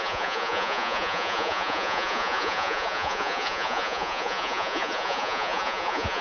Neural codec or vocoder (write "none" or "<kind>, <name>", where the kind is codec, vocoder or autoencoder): vocoder, Vocos